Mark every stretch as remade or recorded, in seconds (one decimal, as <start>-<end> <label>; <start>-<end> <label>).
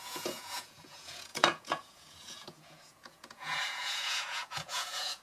0.0-5.2 remade